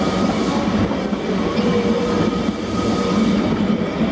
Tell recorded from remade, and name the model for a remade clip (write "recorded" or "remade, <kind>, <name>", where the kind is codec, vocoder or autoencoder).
recorded